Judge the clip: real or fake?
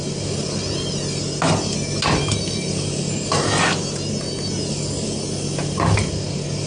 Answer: real